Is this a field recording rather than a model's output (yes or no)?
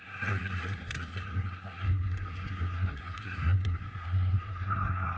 no